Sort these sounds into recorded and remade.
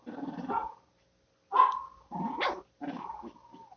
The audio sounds recorded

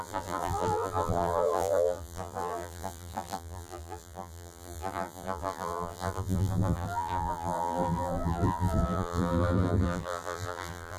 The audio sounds remade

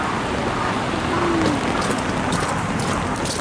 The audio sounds recorded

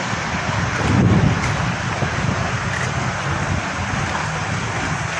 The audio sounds recorded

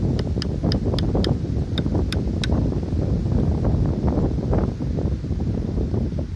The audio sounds recorded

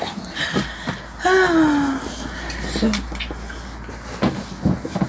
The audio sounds recorded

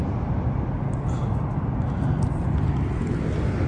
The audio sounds recorded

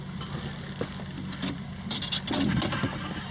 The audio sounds recorded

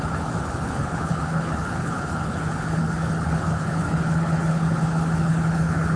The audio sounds remade